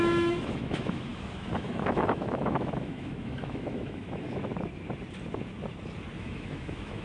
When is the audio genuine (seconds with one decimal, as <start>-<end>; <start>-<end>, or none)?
4.5-6.2